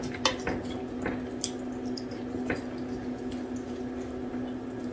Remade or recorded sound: recorded